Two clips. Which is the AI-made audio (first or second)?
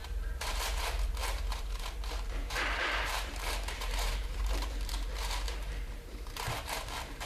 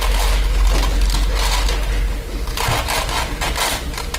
first